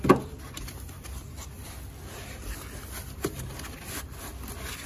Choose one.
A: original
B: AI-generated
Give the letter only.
A